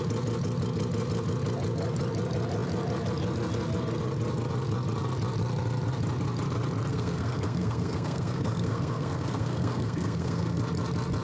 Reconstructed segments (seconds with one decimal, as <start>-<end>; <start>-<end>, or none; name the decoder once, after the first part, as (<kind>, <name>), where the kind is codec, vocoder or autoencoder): 6.9-10.6 (codec, SNAC)